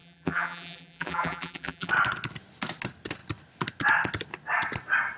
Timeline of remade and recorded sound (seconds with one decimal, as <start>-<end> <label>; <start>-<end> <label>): 0.0-1.9 remade; 1.9-5.2 recorded